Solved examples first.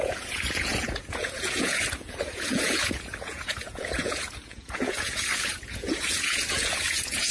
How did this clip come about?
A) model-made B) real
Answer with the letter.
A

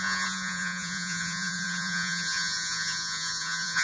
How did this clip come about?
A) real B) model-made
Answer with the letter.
B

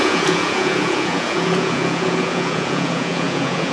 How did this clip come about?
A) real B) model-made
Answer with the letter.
B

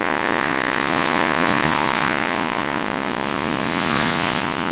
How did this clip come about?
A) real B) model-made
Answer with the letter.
B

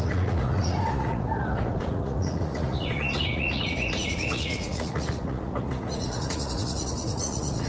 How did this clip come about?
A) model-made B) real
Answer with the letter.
A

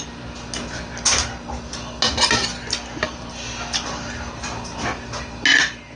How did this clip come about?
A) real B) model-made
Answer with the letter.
A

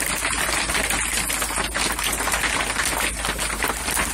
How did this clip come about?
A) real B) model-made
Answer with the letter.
A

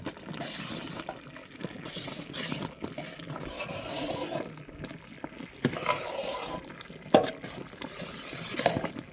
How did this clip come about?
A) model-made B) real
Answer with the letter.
B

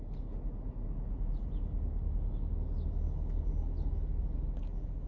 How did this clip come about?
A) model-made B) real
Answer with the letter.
B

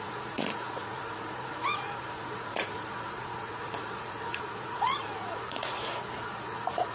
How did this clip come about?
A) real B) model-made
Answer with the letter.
B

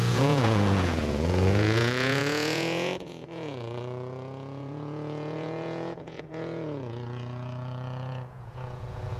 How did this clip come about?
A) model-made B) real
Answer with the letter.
A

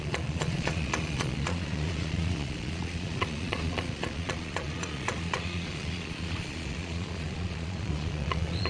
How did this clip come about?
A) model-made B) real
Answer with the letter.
A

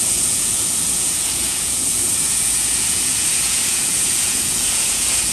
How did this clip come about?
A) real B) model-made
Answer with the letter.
B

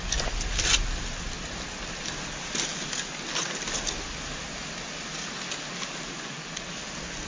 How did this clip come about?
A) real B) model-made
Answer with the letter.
A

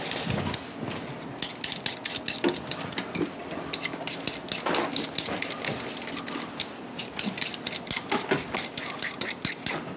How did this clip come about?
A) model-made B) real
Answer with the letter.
B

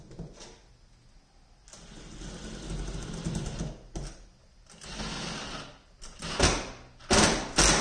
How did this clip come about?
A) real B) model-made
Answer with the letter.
A